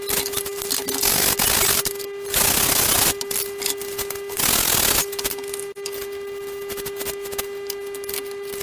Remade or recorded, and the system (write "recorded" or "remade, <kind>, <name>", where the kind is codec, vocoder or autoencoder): recorded